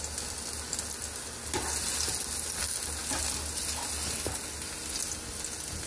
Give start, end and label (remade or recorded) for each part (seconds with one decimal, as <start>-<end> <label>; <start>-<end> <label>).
0.0-5.9 recorded